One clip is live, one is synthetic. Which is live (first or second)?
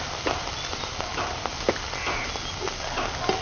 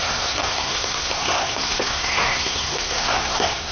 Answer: first